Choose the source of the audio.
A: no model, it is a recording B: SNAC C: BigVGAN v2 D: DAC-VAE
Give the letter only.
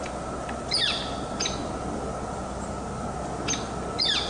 A